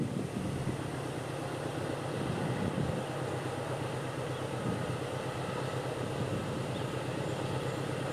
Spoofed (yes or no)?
no